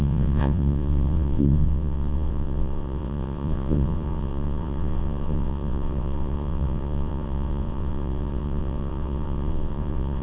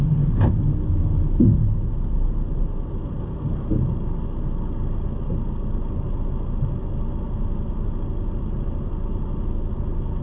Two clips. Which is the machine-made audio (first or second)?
first